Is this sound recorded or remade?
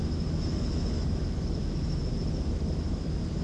remade